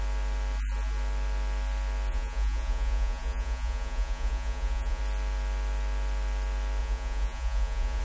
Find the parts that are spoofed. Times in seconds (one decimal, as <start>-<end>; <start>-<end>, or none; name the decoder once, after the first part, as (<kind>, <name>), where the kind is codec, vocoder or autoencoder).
2.1-5.0 (vocoder, Vocos); 6.8-8.0

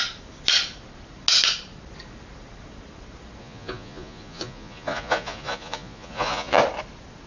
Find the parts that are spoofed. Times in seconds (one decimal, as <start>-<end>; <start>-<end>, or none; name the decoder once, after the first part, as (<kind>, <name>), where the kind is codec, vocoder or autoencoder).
3.4-6.6 (vocoder, Vocos)

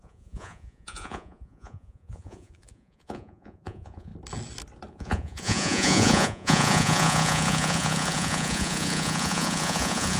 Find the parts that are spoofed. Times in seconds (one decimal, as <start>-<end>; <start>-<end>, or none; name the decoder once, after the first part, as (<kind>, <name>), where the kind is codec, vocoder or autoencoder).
0.0-4.1 (vocoder, Vocos); 4.9-10.2

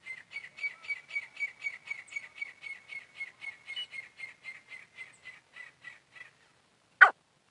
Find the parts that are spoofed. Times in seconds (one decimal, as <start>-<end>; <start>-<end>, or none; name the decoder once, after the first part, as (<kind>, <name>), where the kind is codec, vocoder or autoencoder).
none

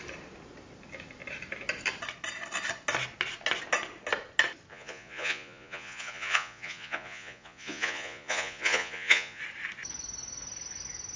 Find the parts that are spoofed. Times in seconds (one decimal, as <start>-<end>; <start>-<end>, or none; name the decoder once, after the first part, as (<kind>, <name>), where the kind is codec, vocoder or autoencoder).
4.7-9.4 (vocoder, Vocos)

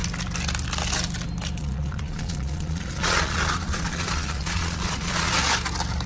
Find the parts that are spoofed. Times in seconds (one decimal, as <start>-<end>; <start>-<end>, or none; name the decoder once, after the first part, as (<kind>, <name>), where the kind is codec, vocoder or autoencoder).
1.6-5.3 (vocoder, Vocos)

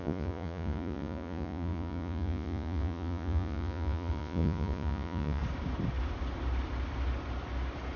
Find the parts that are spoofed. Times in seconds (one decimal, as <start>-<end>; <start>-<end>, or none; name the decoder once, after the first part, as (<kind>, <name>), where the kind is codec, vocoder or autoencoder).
0.0-5.4 (vocoder, Vocos)

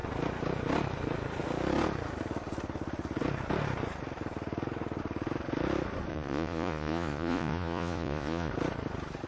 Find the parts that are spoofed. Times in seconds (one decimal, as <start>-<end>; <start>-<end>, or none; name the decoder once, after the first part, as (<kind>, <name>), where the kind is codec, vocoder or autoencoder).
6.1-8.5 (vocoder, Vocos)